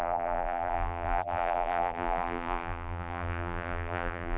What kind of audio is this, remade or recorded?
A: remade